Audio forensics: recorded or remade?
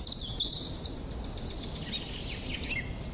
recorded